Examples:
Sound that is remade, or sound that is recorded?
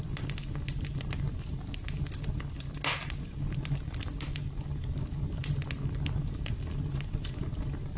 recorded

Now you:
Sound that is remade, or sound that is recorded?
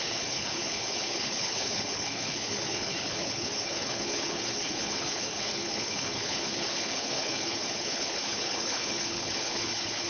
remade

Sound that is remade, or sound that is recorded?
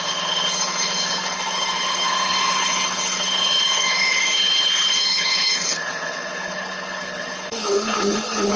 remade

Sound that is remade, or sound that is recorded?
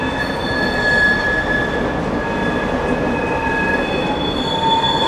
recorded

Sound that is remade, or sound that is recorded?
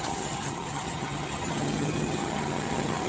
remade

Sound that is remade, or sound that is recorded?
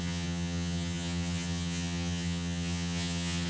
remade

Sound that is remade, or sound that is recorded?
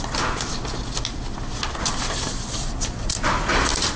recorded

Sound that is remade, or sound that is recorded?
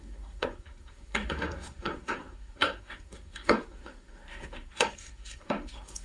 remade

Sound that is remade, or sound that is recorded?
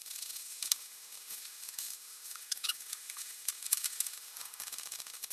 remade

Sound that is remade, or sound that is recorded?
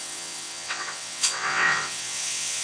remade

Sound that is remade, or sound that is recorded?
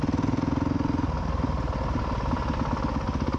recorded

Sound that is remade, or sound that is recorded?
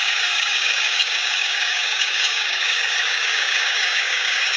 remade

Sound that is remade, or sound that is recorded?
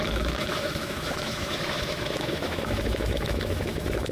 remade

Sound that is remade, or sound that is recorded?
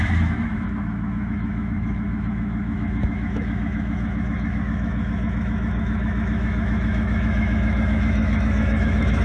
remade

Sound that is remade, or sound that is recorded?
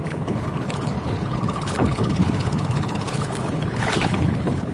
remade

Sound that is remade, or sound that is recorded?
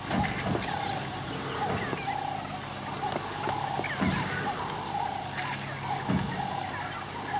recorded